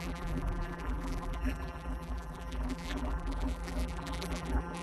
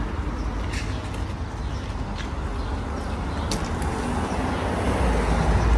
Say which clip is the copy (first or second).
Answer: first